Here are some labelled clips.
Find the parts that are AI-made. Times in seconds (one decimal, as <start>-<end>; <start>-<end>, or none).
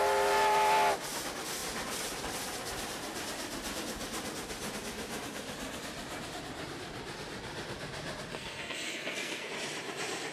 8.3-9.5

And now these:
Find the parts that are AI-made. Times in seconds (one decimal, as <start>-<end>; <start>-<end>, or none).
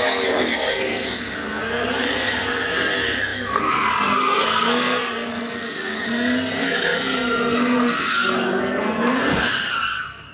0.0-10.3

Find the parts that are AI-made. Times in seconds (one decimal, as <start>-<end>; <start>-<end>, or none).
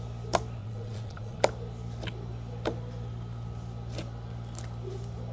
0.6-1.4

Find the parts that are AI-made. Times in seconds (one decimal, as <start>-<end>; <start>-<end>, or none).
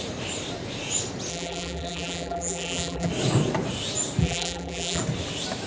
1.3-3.1; 4.2-5.0